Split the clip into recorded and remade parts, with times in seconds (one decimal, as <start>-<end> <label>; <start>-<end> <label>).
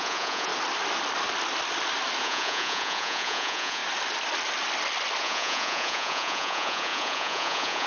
0.0-0.5 remade; 0.5-2.2 recorded; 2.2-3.8 remade; 3.8-5.2 recorded; 5.2-7.9 remade